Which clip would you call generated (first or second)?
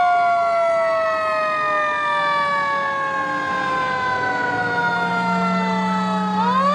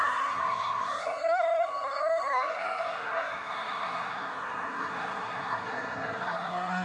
second